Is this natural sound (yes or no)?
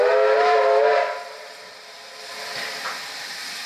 yes